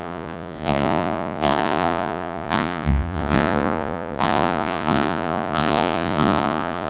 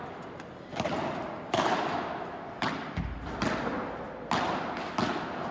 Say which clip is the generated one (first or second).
first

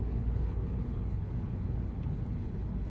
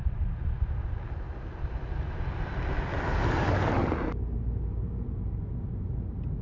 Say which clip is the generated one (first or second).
first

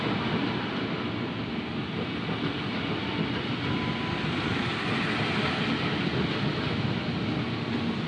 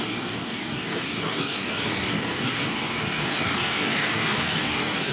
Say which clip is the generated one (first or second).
second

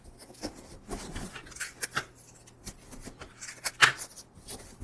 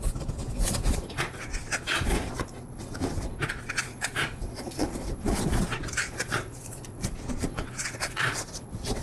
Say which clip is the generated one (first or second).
second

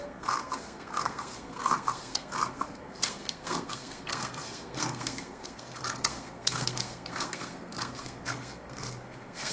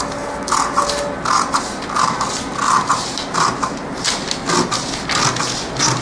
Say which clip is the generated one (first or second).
first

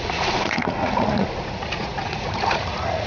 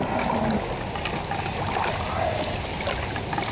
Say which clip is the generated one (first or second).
first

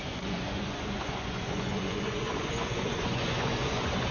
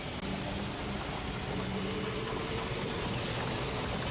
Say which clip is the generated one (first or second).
first